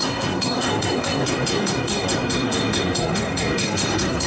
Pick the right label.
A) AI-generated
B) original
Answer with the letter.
A